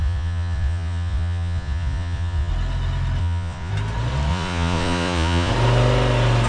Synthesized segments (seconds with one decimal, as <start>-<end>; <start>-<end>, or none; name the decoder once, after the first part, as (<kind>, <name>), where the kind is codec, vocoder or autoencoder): 0.0-2.5 (vocoder, Vocos); 3.2-3.7; 4.3-5.5